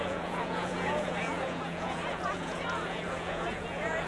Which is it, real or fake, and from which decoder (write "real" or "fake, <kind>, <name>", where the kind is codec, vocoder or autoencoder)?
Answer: fake, vocoder, Vocos